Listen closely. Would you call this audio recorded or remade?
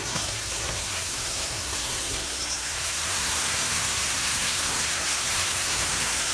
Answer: remade